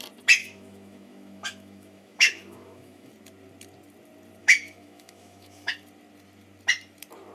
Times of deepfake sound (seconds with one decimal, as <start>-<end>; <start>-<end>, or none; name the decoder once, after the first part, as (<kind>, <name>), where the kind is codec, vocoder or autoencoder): 0.4-3.1 (autoencoder, DAC-VAE); 4.4-5.7